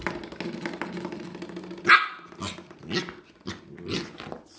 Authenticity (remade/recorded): recorded